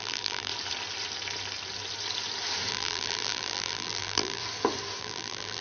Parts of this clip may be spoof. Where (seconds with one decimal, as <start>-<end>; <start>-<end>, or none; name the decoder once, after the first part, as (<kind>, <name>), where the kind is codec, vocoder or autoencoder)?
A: 0.0-0.5 (vocoder, BigVGAN v2); 2.7-4.4; 5.0-5.6